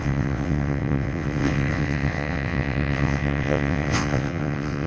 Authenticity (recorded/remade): remade